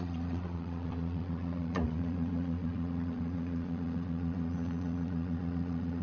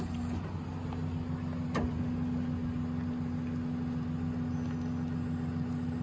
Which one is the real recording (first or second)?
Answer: second